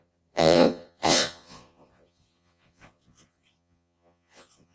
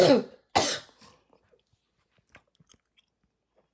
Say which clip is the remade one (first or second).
first